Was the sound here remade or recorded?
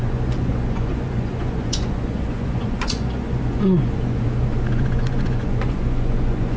remade